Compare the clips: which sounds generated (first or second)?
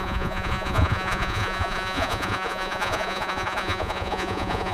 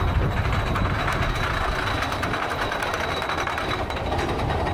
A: first